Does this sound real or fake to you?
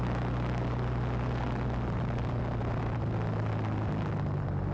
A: real